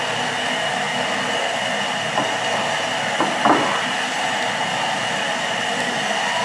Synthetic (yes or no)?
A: no